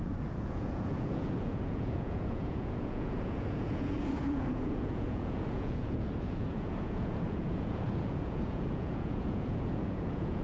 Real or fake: fake